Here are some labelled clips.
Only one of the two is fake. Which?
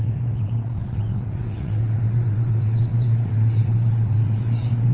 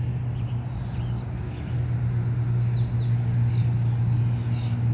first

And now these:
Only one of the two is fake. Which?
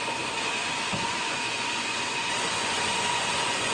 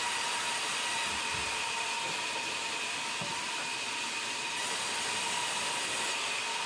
first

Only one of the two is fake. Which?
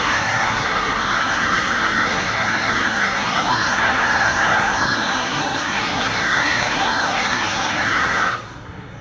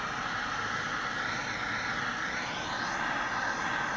first